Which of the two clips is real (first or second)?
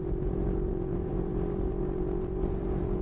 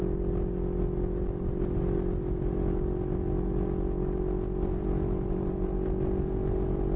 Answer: second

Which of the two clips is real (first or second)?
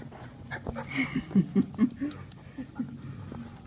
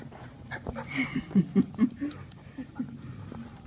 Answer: first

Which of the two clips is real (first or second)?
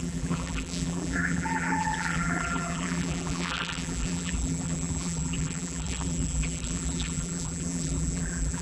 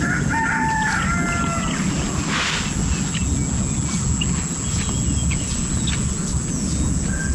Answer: second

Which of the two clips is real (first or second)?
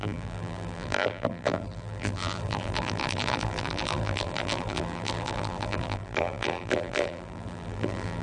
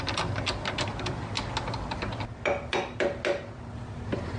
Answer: second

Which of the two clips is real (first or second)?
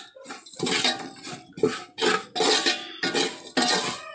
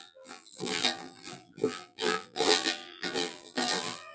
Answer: first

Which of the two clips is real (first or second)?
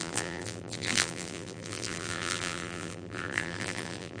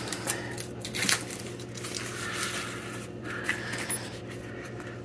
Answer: second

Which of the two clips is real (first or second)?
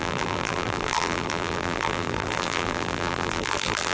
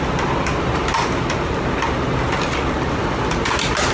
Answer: second